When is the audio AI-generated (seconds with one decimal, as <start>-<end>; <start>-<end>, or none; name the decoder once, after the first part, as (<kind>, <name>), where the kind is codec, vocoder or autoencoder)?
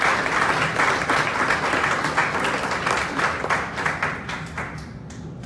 none